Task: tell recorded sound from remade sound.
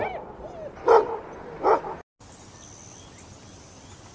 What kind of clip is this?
recorded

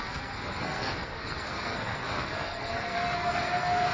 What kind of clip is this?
remade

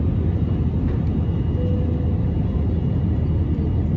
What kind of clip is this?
recorded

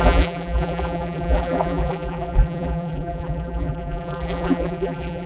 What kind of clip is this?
remade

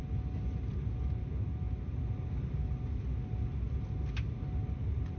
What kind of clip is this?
recorded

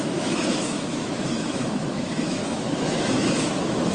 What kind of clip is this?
remade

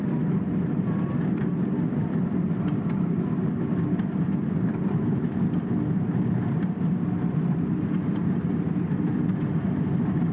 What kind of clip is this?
recorded